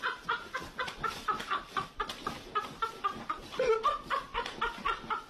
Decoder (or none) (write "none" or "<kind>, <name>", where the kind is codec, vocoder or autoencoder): none